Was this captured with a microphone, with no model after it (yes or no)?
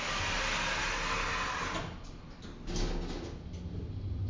yes